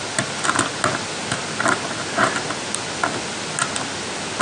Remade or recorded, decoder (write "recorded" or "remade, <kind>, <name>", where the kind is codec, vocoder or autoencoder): recorded